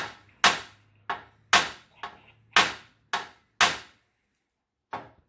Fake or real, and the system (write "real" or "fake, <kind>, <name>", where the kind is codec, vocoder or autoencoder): real